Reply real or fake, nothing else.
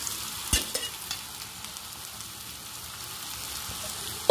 real